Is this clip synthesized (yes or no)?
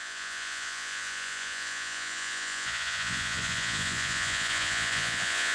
yes